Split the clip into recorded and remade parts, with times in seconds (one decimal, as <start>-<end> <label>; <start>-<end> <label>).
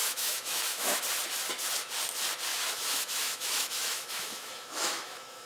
0.0-1.0 remade; 1.0-2.5 recorded; 2.5-5.5 remade